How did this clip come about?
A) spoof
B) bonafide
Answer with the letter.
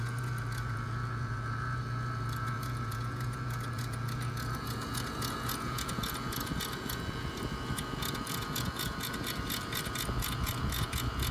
A